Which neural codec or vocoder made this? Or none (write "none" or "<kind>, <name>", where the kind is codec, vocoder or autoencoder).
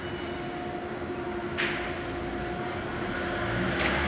none